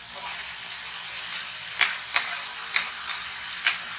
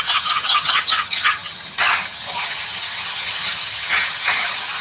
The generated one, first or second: second